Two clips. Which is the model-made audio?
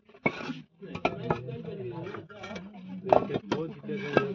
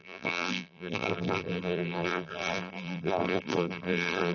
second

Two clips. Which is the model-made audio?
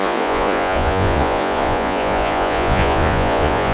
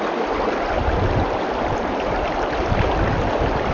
first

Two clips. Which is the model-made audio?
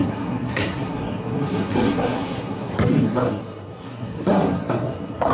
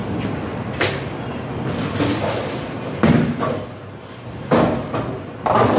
first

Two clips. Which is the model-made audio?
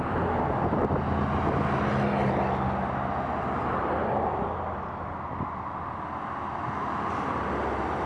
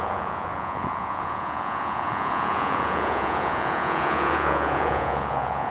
second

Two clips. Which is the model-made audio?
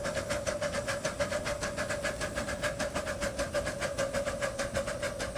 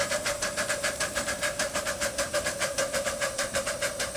second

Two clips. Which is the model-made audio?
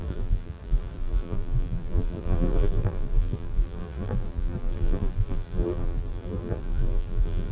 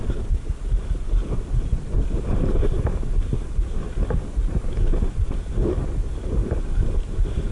first